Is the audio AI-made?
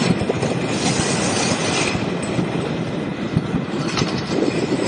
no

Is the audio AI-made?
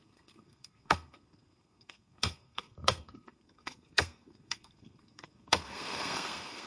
yes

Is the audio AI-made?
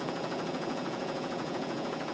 yes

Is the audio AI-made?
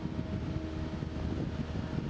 no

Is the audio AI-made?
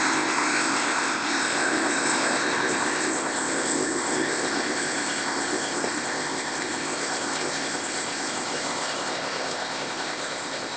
yes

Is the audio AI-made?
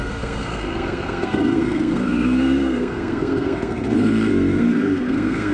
yes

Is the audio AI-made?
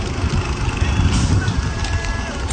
no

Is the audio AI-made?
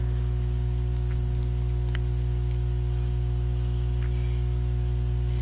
no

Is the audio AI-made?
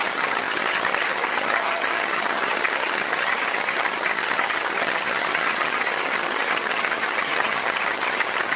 yes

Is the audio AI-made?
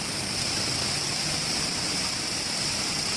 no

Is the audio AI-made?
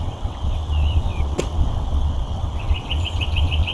yes